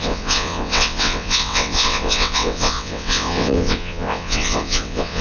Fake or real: fake